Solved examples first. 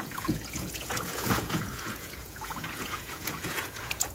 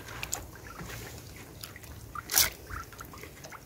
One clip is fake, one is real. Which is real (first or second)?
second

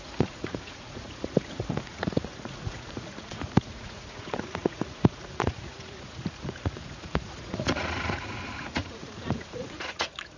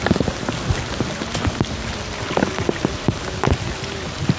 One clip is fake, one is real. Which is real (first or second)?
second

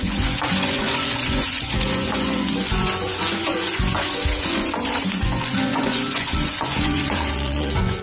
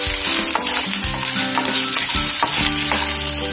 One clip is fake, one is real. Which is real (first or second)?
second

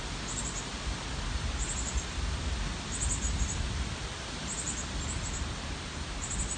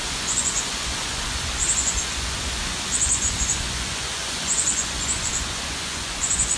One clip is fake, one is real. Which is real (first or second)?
first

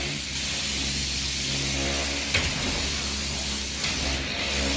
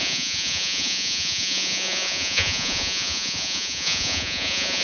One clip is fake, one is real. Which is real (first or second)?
first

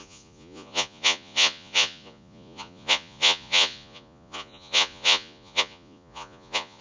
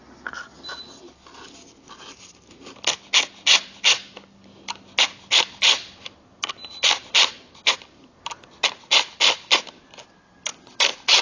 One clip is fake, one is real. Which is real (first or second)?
second